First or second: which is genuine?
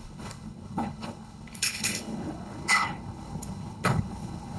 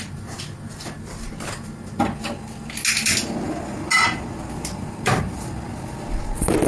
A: second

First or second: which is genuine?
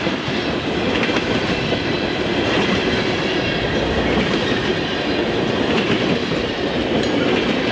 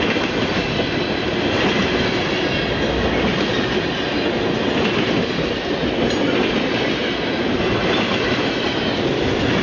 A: second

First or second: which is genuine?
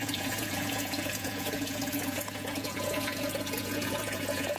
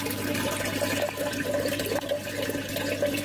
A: second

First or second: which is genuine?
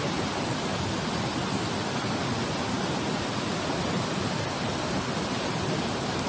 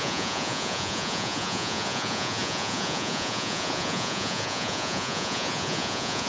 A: first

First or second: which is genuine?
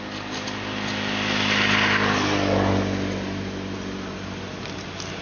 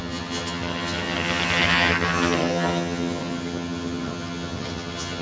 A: first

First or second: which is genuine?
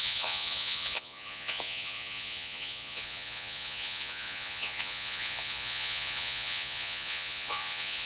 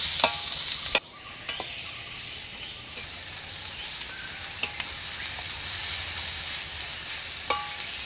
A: second